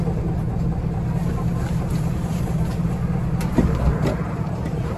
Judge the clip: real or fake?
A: fake